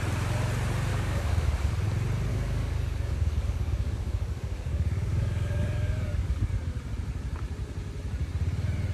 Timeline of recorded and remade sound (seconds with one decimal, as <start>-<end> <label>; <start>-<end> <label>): 0.0-0.9 recorded; 0.9-1.7 remade; 1.7-2.3 recorded; 2.3-6.5 remade; 6.5-8.9 recorded